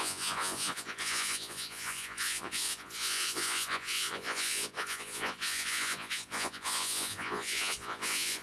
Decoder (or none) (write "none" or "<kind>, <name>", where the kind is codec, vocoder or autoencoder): vocoder, Vocos